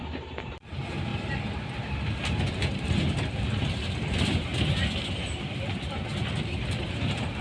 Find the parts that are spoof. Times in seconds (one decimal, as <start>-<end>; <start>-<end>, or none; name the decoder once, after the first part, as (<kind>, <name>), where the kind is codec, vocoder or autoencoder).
0.0-1.1 (vocoder, BigVGAN v2); 2.5-4.5; 5.1-6.1; 6.8-7.4